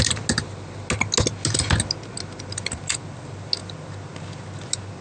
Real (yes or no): yes